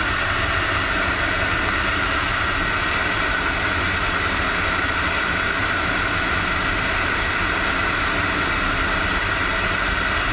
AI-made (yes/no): no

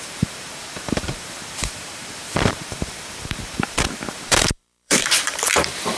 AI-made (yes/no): yes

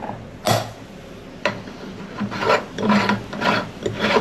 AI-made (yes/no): no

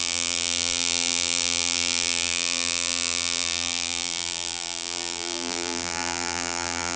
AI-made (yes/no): yes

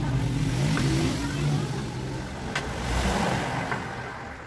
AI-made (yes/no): no